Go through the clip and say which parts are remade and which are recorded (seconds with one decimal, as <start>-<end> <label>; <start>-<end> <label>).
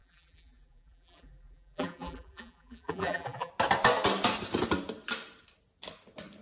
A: 0.0-3.5 remade; 3.5-6.4 recorded